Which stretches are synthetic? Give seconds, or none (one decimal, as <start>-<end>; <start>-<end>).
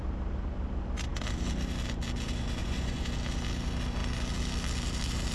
2.6-3.1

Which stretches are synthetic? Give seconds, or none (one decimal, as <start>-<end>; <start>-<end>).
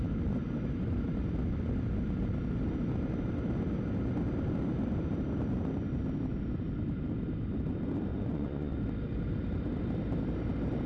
8.1-8.8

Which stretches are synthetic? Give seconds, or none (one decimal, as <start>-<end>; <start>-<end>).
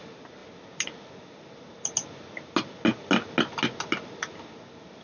none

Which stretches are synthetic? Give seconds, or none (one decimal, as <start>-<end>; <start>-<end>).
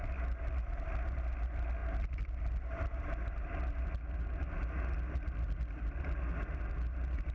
none